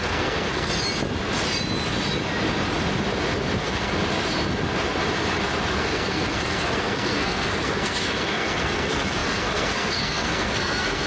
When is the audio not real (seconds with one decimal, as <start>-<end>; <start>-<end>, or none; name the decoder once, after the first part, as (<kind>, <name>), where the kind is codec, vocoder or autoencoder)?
0.0-0.7 (codec, SNAC); 3.6-4.0; 5.8-11.1